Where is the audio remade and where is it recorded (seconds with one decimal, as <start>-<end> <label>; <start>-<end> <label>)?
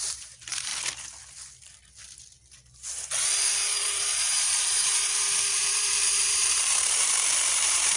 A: 0.0-0.7 remade; 0.7-3.5 recorded; 3.5-8.0 remade